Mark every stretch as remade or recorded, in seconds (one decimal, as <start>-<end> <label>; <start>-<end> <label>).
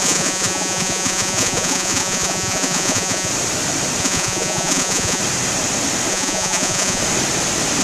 0.0-3.3 remade; 3.3-4.0 recorded; 4.0-5.2 remade; 5.2-6.1 recorded; 6.1-7.0 remade; 7.0-7.8 recorded